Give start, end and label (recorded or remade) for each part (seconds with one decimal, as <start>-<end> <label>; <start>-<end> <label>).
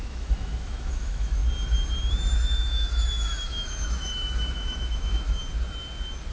0.0-1.4 remade; 1.4-2.1 recorded; 2.1-5.4 remade; 5.4-6.3 recorded